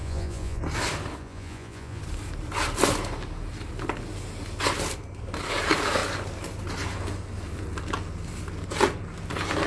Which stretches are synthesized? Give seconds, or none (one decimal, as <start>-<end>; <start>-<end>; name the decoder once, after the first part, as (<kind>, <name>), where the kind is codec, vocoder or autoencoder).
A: 0.0-0.6 (vocoder, Vocos); 1.2-2.0